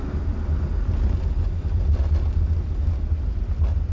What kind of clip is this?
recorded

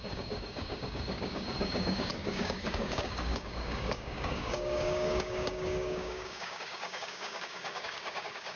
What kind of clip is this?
remade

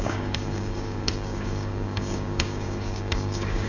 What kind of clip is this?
remade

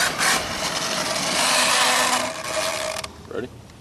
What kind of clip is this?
recorded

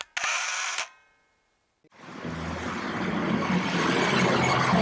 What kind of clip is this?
recorded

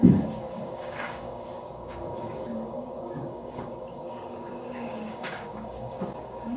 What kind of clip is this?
remade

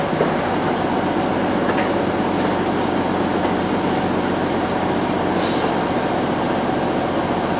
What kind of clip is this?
recorded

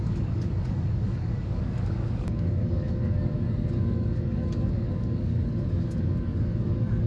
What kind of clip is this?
remade